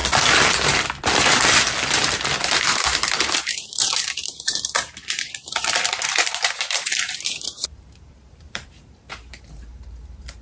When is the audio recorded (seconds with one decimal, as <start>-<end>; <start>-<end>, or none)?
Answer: 0.0-2.4